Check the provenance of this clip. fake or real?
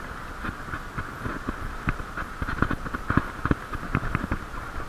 real